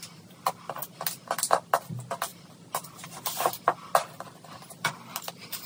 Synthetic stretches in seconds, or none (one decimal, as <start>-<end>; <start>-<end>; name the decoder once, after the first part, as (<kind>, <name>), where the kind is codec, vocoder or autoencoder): none